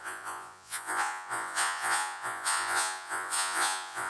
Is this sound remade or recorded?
remade